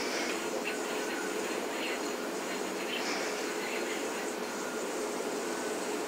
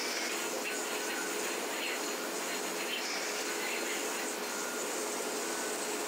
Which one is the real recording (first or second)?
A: second